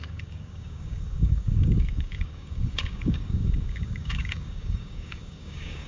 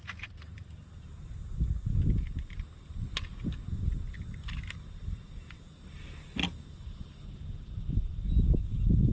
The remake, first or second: first